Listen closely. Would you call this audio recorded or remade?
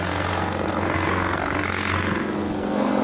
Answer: remade